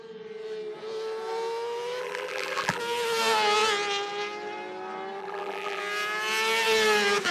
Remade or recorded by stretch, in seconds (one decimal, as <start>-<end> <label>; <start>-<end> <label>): 0.0-2.0 recorded; 2.0-2.8 remade; 2.8-5.2 recorded; 5.2-5.8 remade; 5.8-7.3 recorded